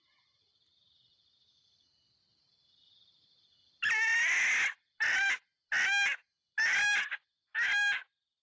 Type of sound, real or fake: real